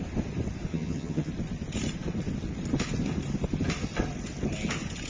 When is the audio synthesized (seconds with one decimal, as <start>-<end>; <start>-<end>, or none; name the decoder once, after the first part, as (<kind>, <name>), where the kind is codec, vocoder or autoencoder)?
0.7-1.3 (vocoder, HiFi-GAN)